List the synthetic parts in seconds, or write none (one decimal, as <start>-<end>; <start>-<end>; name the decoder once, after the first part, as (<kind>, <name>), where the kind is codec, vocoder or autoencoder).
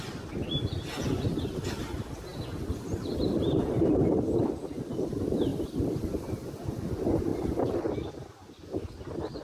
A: none